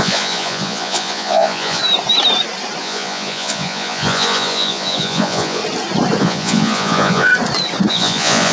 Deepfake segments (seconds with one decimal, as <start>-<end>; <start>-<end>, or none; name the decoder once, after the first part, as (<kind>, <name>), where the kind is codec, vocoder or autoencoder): 0.0-1.8 (vocoder, Vocos); 2.8-5.6; 6.2-7.3; 7.9-8.5